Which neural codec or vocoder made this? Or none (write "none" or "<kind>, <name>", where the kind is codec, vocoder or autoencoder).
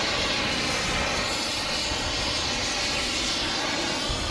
none